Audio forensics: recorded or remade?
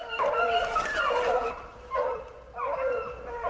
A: recorded